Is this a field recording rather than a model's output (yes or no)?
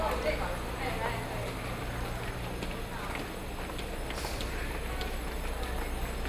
yes